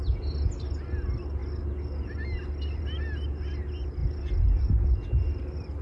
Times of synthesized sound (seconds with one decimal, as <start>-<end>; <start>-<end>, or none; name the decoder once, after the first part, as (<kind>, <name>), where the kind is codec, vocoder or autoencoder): none